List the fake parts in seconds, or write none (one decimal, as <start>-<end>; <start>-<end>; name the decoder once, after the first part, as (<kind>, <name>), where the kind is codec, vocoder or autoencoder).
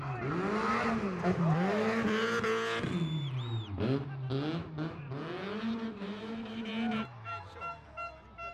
none